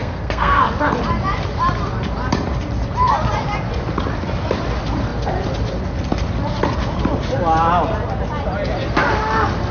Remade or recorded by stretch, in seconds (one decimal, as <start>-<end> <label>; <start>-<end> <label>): 0.0-0.6 remade; 0.6-9.7 recorded